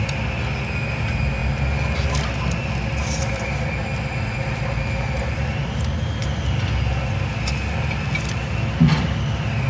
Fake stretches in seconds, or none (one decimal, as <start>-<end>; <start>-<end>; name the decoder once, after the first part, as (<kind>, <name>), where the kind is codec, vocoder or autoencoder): none